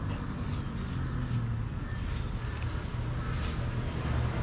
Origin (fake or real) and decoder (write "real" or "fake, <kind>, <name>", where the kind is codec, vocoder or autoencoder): real